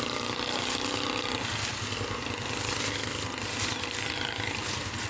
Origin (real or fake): real